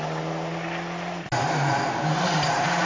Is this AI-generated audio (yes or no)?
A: no